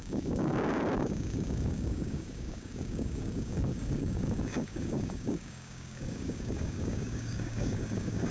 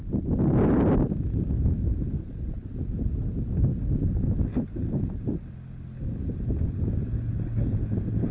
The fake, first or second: first